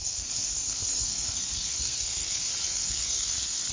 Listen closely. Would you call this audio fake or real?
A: fake